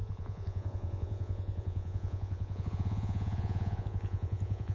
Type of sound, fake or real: fake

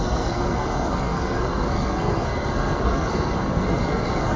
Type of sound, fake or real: fake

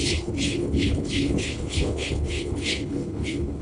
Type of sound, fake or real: fake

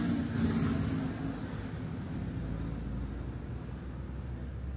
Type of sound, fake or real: real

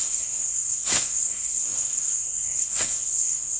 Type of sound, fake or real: fake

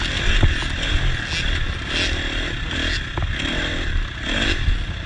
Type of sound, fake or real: real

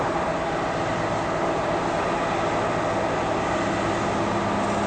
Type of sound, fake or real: real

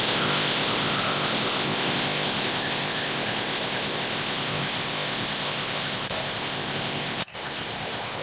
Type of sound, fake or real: fake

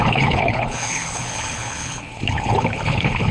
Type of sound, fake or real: fake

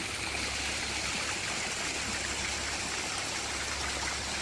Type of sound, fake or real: real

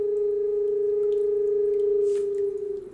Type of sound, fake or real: real